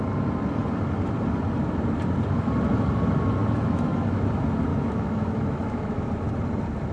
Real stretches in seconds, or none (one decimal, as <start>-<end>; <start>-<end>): 0.0-3.4; 4.3-4.7; 6.1-6.9